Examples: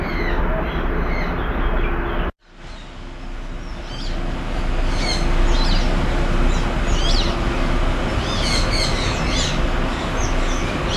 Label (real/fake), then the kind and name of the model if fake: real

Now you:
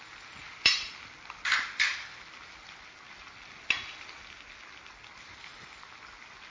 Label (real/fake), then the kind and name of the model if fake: real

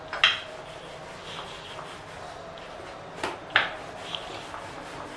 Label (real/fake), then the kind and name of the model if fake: real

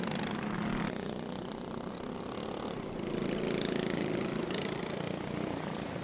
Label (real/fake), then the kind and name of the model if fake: real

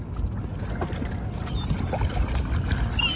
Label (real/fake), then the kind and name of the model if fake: real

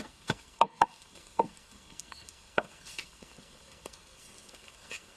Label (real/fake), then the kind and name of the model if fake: fake, codec, SNAC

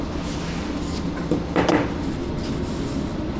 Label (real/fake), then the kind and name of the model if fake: real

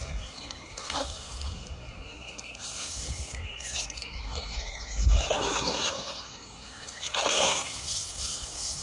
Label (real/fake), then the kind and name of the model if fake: fake, codec, SNAC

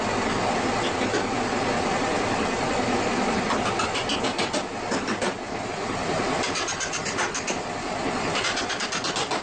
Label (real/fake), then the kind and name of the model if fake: real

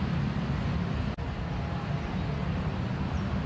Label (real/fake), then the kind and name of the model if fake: real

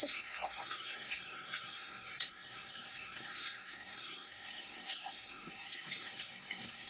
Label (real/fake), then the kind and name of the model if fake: fake, codec, SNAC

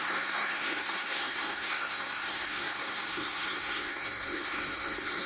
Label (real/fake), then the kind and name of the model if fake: fake, codec, SNAC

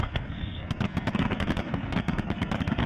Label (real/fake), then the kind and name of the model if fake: fake, codec, SNAC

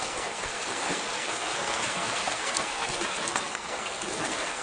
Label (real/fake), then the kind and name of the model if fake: fake, codec, SNAC